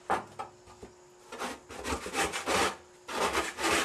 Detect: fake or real real